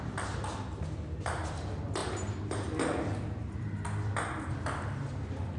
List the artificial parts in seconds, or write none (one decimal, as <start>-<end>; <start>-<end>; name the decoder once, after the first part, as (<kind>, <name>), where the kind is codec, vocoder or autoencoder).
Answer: none